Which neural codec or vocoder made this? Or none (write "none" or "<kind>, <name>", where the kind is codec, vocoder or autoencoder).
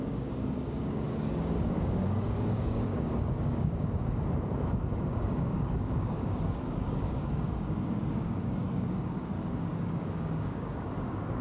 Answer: codec, DAC